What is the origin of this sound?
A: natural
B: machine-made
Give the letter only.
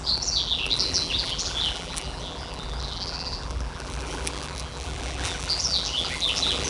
B